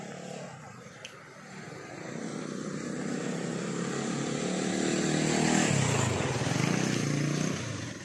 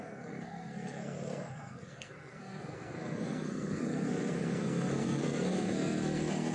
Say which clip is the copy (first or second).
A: second